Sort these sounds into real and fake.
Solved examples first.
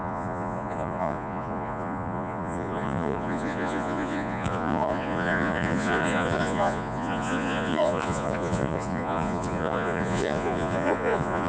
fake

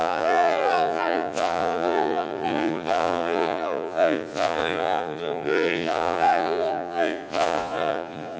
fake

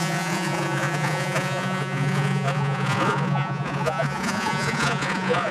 fake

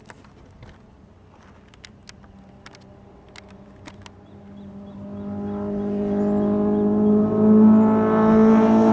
real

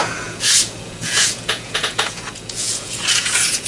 fake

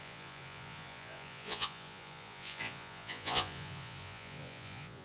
fake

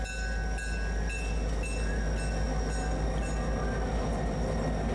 real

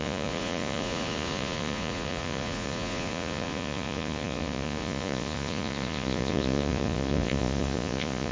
fake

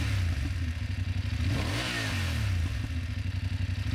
real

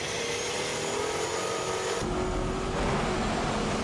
real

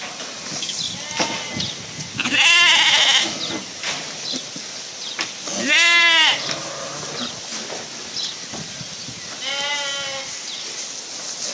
real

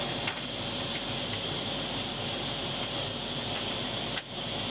real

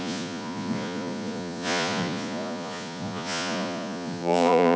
fake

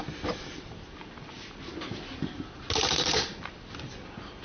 real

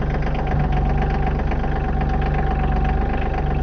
real